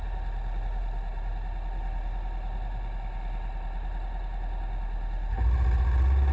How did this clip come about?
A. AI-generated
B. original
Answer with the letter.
B